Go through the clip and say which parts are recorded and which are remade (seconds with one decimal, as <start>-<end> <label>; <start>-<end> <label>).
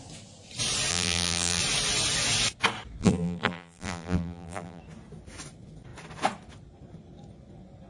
0.0-0.9 recorded; 0.9-1.6 remade; 1.6-3.0 recorded; 3.0-4.8 remade; 4.8-7.9 recorded